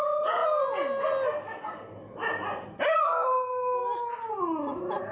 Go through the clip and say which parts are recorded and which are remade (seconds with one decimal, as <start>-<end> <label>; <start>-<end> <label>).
0.0-5.1 recorded